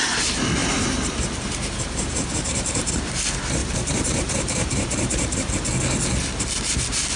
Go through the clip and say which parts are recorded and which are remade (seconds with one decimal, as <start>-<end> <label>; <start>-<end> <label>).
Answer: 0.0-0.6 recorded; 0.6-2.9 remade; 2.9-3.6 recorded; 3.6-5.5 remade; 5.5-7.2 recorded